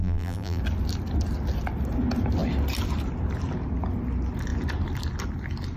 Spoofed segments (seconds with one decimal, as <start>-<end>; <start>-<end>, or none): 0.0-0.6